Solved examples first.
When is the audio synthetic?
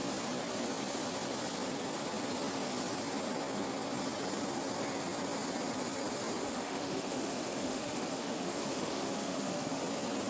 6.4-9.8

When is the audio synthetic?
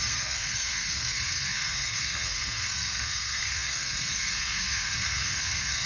0.0-5.9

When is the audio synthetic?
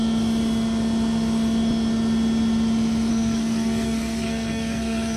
3.1-5.2